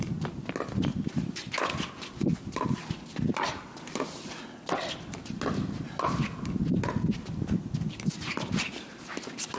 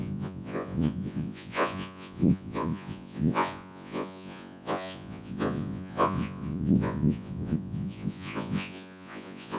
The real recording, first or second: first